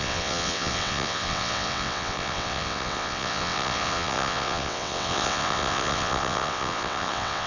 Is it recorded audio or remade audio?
remade